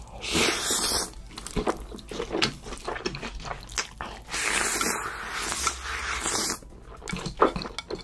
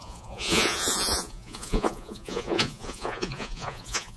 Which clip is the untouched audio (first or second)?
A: first